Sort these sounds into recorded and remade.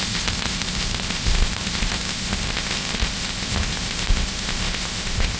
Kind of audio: remade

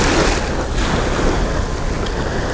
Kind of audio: recorded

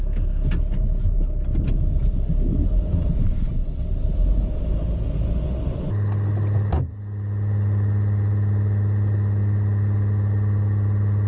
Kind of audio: recorded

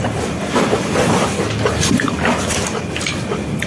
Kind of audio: recorded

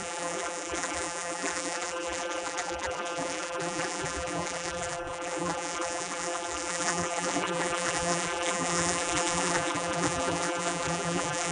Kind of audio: remade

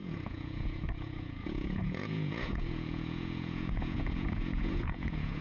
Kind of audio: remade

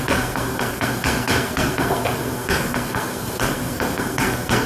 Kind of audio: remade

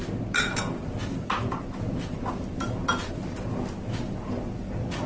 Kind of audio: recorded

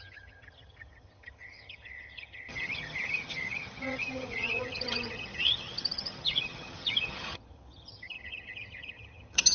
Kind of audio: remade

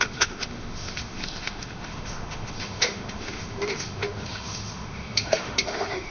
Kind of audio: remade